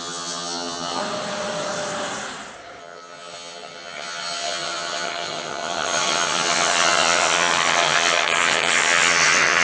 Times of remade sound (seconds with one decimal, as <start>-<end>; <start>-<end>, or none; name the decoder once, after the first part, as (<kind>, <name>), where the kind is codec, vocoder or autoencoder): 0.0-1.0 (vocoder, HiFi-GAN); 2.8-9.6